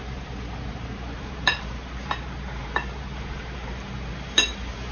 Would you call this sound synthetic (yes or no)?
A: yes